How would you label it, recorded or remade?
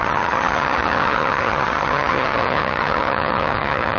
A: remade